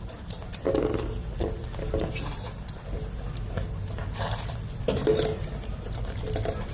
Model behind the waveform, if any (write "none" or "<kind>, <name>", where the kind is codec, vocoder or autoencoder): none